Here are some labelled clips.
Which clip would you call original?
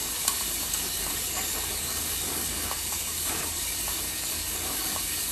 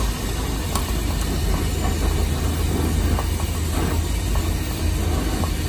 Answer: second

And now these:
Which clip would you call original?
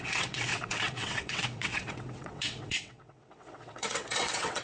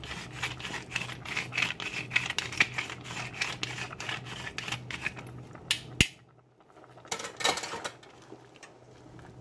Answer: second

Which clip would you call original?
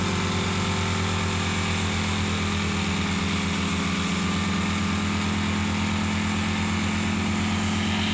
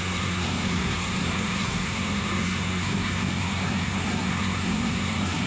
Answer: first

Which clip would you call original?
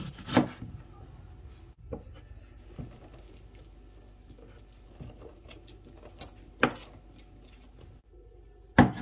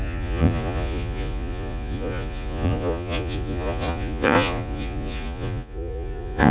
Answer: first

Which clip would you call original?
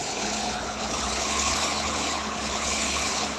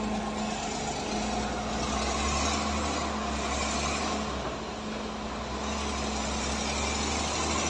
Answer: second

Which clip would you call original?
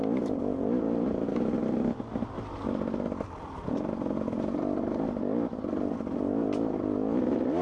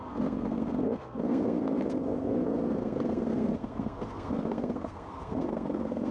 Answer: first